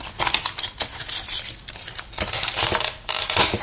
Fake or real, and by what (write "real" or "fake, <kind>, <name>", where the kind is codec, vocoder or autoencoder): real